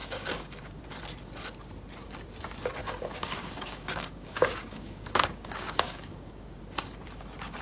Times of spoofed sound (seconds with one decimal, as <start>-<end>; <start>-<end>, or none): 0.0-0.8; 2.8-6.6

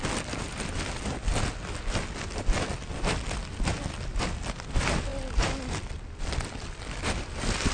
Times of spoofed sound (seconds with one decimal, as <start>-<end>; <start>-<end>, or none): none